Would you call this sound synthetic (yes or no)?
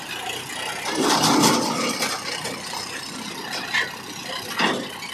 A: no